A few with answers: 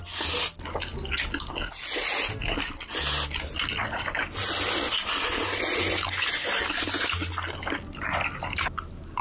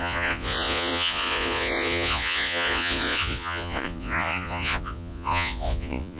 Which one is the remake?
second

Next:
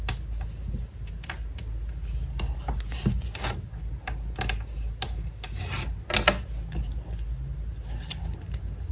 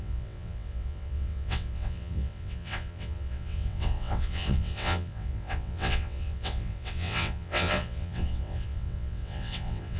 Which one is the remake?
second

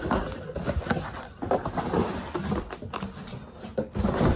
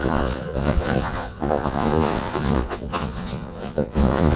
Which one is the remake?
second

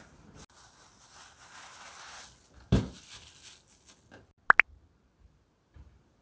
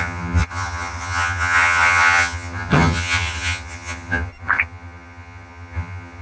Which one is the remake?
second